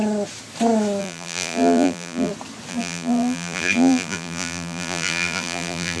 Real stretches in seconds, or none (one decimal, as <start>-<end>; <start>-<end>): 0.0-1.0; 2.3-2.7